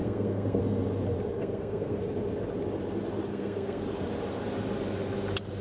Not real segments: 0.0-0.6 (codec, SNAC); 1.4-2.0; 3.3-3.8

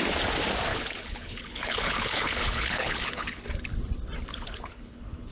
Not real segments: 0.7-3.4 (codec, HILCodec); 4.3-5.3